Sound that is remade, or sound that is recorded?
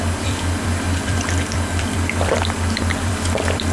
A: remade